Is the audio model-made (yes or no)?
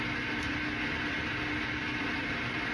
no